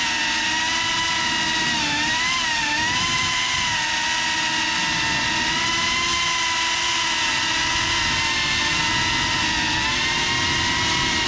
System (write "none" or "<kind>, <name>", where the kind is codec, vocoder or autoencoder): none